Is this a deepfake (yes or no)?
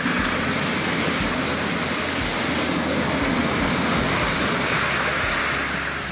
no